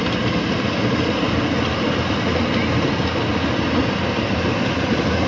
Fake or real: real